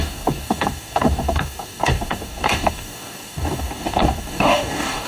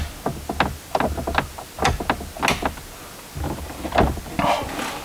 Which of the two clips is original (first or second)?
second